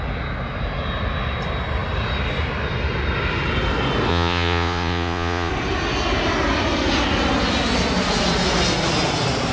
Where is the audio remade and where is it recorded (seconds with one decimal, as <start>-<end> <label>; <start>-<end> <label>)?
0.0-4.1 recorded; 4.1-5.5 remade; 5.5-9.5 recorded